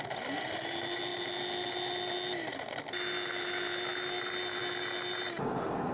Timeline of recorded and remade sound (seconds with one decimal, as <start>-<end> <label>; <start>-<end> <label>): 0.0-5.9 recorded